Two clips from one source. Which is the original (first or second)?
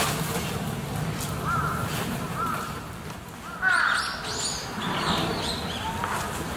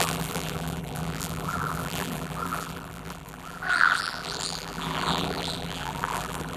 first